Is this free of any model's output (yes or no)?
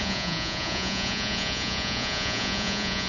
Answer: no